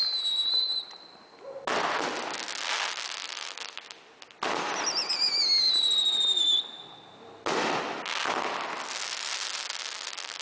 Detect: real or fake real